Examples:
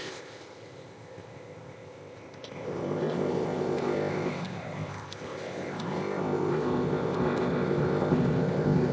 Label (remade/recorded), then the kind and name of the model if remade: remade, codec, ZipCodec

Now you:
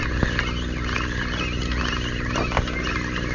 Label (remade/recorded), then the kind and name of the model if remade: recorded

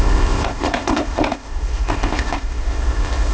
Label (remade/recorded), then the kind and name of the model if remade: remade, codec, ZipCodec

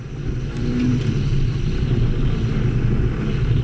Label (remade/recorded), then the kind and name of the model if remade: recorded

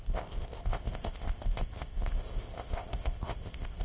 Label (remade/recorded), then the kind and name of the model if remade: remade, codec, ZipCodec